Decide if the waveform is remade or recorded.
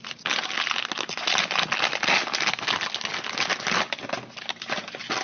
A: recorded